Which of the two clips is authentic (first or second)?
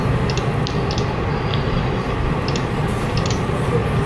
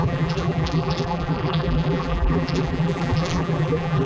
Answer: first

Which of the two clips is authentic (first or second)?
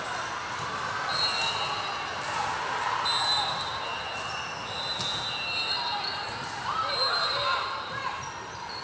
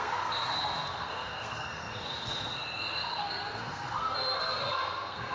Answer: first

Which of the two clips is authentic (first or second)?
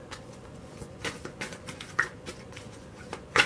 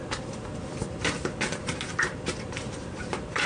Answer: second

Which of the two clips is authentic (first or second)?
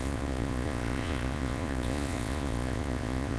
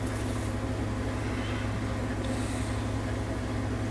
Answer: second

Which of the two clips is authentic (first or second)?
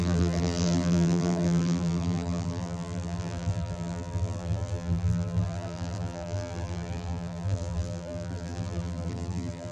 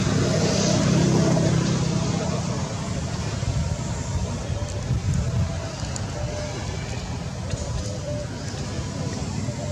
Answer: second